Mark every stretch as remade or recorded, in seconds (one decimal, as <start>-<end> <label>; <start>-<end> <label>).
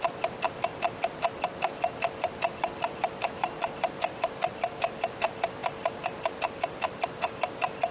0.0-7.9 recorded